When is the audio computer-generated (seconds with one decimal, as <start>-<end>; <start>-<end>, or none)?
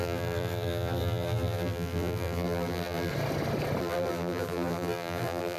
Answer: 0.0-3.1; 3.8-5.6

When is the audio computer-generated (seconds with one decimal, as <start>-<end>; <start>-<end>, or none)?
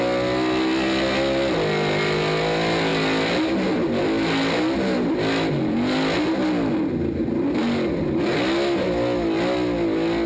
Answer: none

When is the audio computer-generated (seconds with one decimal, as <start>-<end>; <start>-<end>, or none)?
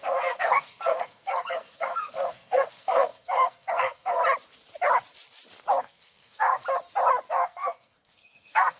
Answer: 0.0-4.2; 5.8-6.6; 7.3-8.8